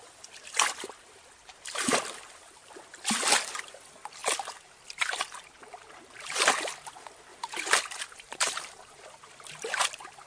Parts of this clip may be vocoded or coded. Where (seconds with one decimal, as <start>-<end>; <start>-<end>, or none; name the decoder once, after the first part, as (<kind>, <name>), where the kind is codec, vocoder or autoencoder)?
1.4-3.0 (vocoder, BigVGAN v2); 7.3-8.9